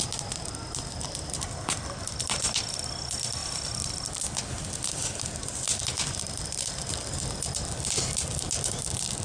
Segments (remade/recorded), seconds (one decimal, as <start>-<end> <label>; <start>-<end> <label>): 0.0-9.2 recorded